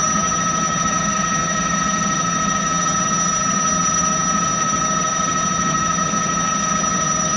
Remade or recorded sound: remade